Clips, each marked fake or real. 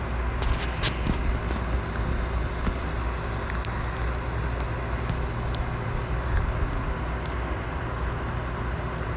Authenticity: real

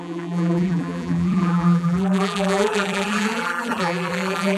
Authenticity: fake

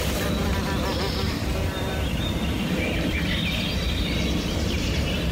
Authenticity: fake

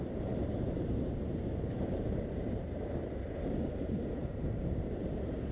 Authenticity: fake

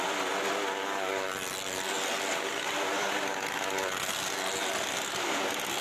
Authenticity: fake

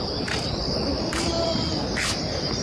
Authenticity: fake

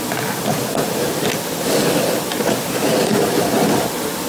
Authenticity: real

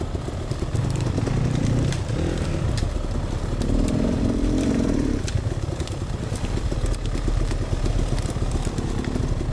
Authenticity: fake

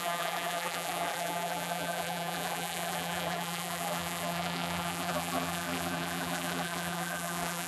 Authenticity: fake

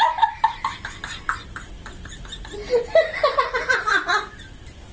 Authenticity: real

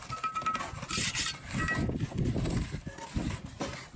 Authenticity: real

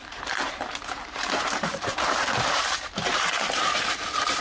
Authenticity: fake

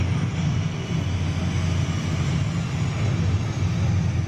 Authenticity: real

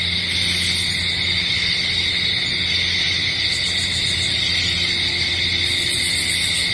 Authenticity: real